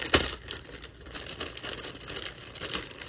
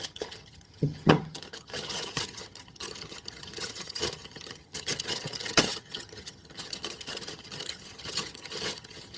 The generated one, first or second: second